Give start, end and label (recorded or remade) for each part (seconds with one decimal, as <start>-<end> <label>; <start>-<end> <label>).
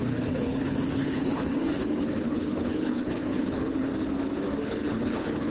0.0-3.9 remade; 3.9-4.6 recorded; 4.6-5.5 remade